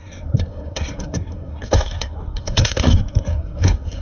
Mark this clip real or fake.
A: fake